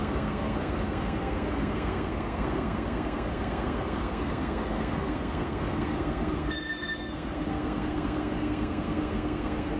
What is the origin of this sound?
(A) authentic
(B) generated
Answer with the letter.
B